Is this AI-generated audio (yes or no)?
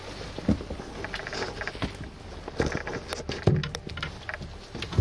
no